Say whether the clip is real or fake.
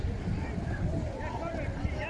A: real